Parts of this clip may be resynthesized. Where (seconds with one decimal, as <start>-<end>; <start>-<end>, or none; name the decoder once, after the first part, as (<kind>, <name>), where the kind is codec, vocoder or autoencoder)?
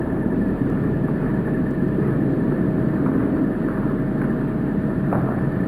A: 0.0-1.3 (vocoder, BigVGAN v2); 4.7-5.7